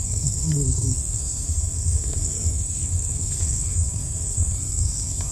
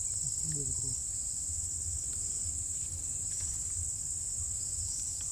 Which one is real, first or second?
second